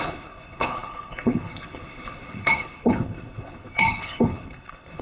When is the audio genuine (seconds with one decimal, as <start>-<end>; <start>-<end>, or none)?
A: none